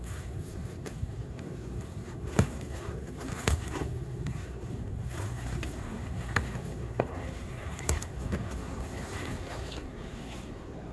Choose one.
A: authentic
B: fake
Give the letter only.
B